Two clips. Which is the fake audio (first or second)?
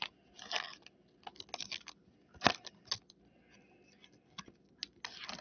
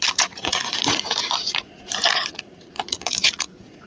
second